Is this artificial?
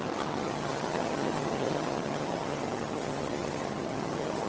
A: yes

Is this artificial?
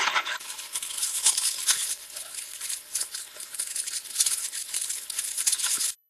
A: yes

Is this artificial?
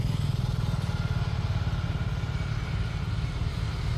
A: no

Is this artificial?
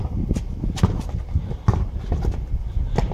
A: no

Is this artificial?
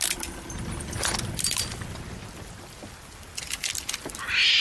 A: no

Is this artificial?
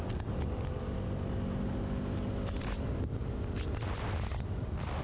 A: no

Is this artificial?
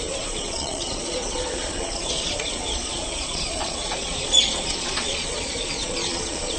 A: yes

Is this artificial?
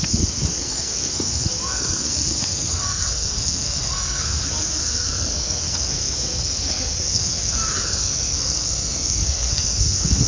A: yes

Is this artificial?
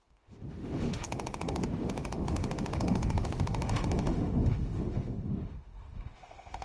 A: yes